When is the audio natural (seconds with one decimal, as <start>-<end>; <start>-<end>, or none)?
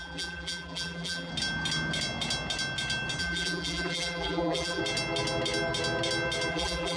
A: 1.3-3.2; 4.8-6.5